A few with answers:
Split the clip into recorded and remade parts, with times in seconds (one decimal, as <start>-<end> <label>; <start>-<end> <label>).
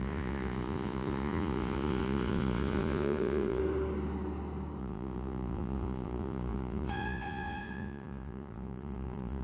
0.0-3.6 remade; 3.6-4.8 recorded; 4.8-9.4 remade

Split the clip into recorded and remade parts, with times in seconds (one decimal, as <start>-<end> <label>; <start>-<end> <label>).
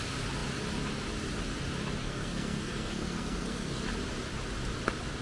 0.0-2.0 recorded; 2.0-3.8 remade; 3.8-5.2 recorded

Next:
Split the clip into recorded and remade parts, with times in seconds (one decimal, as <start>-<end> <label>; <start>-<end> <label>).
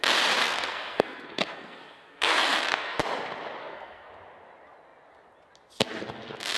0.0-0.4 recorded; 0.4-3.0 remade; 3.0-3.6 recorded; 3.6-4.1 remade; 4.1-6.6 recorded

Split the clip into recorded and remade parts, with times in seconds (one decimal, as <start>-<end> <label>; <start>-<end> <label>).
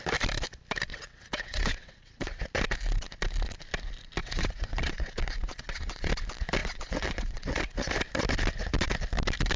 0.0-0.9 recorded; 0.9-2.4 remade; 2.4-4.2 recorded; 4.2-6.1 remade; 6.1-6.6 recorded; 6.6-7.9 remade; 7.9-9.6 recorded